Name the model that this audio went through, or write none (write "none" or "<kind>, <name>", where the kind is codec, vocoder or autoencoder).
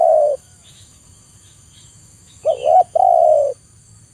autoencoder, DAC-VAE